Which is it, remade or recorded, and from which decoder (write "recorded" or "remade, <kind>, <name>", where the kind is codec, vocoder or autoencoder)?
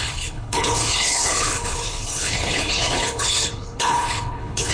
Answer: remade, codec, HILCodec